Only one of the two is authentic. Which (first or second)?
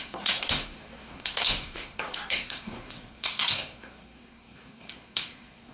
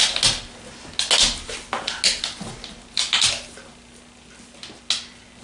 second